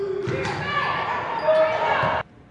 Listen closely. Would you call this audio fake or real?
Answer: real